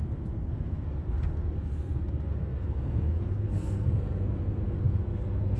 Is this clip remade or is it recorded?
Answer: remade